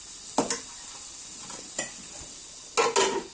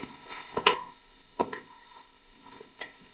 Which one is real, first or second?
first